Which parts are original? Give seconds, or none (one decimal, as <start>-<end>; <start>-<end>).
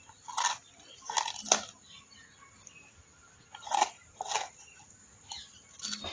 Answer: 0.0-6.1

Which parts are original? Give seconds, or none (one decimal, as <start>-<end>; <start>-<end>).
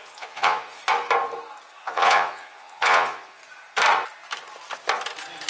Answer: 0.8-1.8; 3.4-5.5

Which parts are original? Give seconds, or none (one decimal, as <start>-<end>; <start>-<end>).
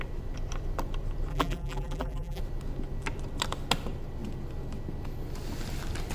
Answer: 0.0-1.3; 2.4-6.1